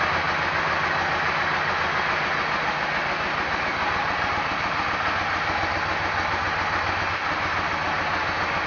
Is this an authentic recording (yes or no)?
yes